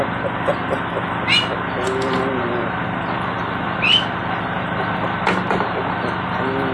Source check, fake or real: real